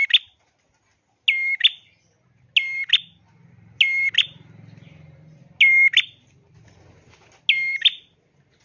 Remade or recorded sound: recorded